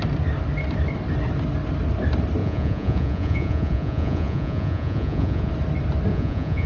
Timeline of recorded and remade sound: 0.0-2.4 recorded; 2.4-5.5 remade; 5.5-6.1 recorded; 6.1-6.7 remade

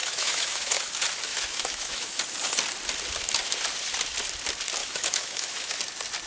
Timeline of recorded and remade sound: 0.0-0.9 remade; 0.9-1.3 recorded; 1.3-2.2 remade; 2.2-4.8 recorded; 4.8-5.8 remade; 5.8-6.3 recorded

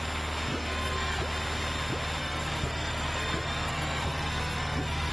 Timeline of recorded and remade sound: 0.0-0.5 recorded; 0.5-1.2 remade; 1.2-2.2 recorded; 2.2-5.1 remade

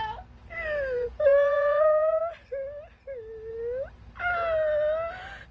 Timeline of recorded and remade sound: 0.0-1.0 recorded; 1.0-2.2 remade; 2.2-5.5 recorded

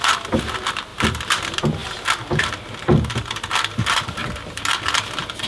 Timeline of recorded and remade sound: 0.0-5.5 recorded